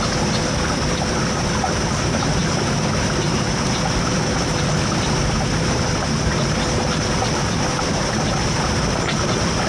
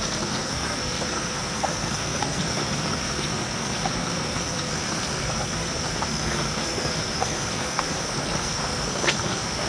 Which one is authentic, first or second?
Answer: first